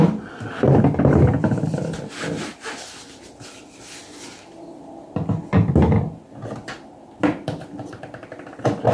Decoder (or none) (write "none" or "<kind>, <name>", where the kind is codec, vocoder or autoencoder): none